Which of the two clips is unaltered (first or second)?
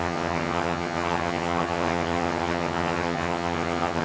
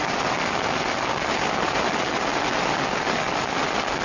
second